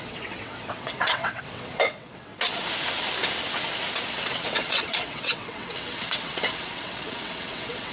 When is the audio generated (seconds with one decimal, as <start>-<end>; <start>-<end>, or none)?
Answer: 0.0-2.3; 4.1-7.9